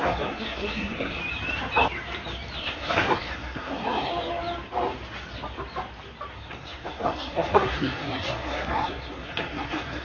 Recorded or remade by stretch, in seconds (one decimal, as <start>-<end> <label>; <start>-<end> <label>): 0.0-1.2 remade; 1.2-2.6 recorded; 2.6-4.1 remade; 4.1-6.3 recorded; 6.3-10.0 remade